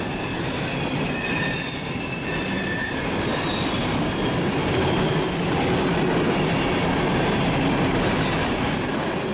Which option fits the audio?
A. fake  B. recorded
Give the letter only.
B